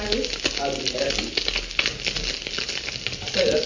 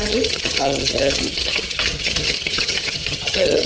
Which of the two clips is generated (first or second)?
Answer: second